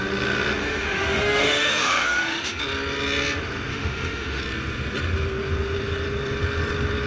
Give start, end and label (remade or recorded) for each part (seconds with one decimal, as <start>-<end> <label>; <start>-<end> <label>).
0.0-0.6 recorded; 0.6-2.6 remade; 2.6-3.7 recorded; 3.7-4.4 remade; 4.4-7.1 recorded